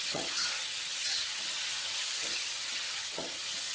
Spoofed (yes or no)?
yes